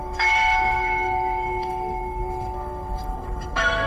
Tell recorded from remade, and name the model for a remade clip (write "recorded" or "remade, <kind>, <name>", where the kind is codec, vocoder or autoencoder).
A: remade, codec, SNAC